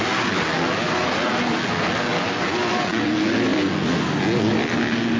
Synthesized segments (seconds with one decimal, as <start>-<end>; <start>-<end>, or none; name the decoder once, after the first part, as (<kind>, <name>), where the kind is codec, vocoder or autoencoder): none